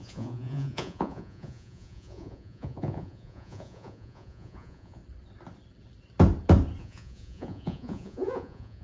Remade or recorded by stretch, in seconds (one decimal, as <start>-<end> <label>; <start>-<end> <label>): 0.0-5.0 remade; 5.0-6.8 recorded; 6.8-8.8 remade

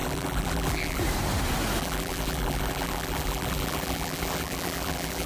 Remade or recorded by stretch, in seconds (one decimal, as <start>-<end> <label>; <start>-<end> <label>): 0.0-1.0 remade; 1.0-1.8 recorded; 1.8-5.3 remade

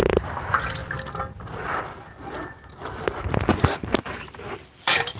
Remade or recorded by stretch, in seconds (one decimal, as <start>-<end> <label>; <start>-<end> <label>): 0.0-3.5 recorded; 3.5-4.1 remade; 4.1-5.2 recorded

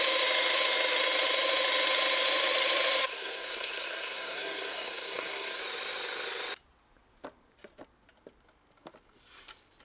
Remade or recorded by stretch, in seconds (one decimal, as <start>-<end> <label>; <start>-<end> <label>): 0.0-3.0 recorded; 3.0-5.6 remade; 5.6-9.8 recorded

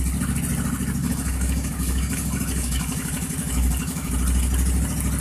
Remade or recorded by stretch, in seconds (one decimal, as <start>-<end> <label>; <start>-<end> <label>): 0.0-1.0 recorded; 1.0-4.1 remade; 4.1-5.2 recorded